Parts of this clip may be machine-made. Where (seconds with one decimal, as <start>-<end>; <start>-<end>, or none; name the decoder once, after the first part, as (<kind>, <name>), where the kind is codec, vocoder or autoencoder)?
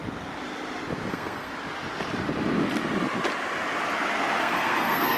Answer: 1.1-1.5 (codec, SNAC); 4.4-5.2